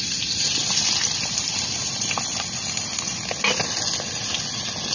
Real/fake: real